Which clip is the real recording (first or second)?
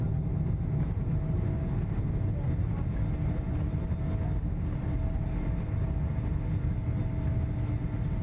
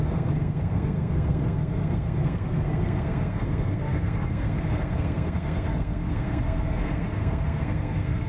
first